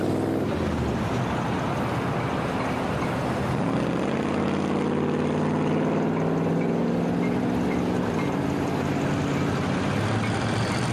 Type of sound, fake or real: real